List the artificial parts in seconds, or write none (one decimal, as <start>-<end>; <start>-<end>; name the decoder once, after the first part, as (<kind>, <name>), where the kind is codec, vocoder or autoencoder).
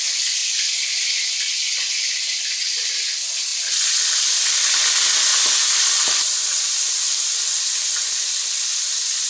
none